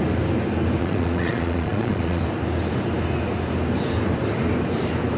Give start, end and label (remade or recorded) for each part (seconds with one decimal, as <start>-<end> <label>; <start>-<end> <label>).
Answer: 0.0-0.8 recorded; 0.8-2.2 remade; 2.2-5.2 recorded